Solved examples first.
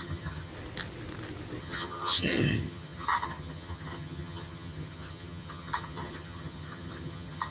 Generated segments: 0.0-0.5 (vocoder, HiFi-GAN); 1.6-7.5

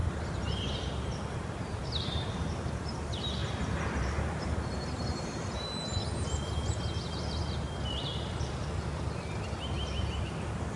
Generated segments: 0.0-3.4 (vocoder, BigVGAN v2); 4.0-6.0; 10.2-10.8

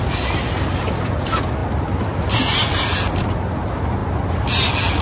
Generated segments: none

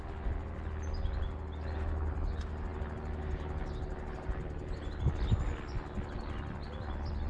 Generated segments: none

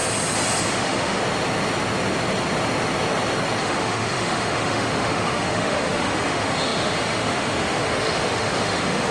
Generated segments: 0.7-1.2 (autoencoder, DAC-VAE); 3.6-9.1

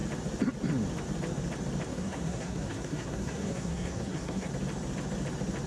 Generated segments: 1.9-4.5 (codec, SNAC)

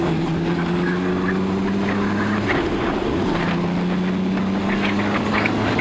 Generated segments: 0.0-1.1 (codec, DAC); 4.6-5.8

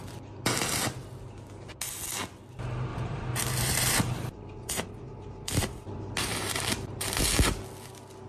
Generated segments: 2.9-7.2 (vocoder, BigVGAN v2)